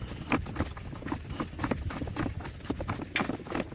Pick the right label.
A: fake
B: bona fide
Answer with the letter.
B